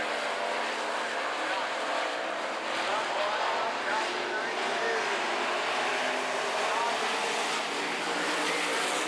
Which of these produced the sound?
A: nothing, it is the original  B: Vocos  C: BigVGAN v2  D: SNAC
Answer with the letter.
A